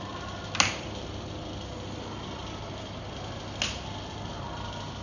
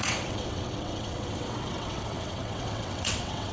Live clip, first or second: first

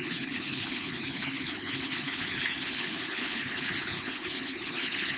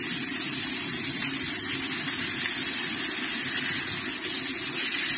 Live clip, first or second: second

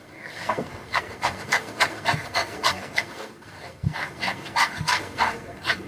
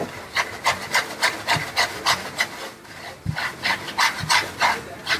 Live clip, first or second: second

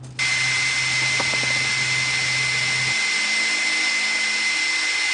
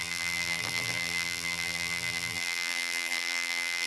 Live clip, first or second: first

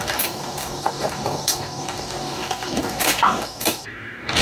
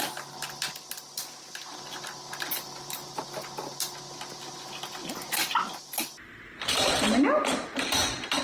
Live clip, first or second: second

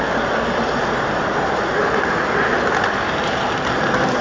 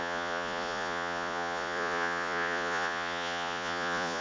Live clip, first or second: first